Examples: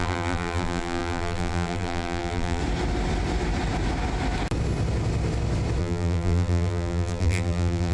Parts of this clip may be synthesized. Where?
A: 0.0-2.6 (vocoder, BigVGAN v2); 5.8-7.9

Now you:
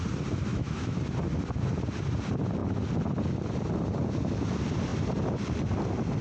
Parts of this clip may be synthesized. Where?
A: 0.5-1.0 (autoencoder, DAC-VAE)

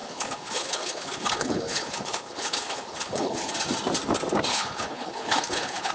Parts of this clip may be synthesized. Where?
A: 0.0-3.5 (codec, HILCodec); 4.5-5.9

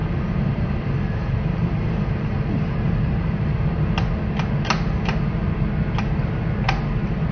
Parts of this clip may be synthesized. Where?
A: 0.0-3.9 (vocoder, BigVGAN v2)

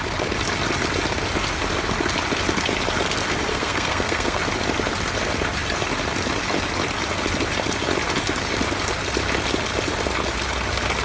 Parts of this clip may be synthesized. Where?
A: 3.5-4.4 (codec, SNAC)

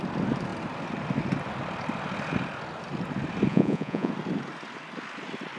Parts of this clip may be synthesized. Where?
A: 3.5-4.1 (vocoder, Vocos)

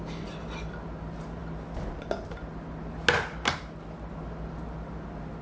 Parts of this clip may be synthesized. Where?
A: none

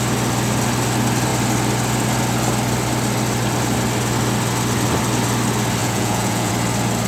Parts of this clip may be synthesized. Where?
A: 5.8-6.5 (vocoder, Vocos)